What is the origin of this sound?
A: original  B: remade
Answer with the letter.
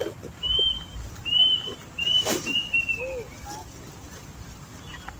B